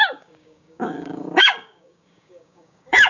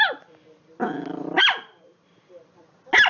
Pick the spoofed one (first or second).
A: first